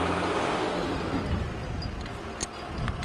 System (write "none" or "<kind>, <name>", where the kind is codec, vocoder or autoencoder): none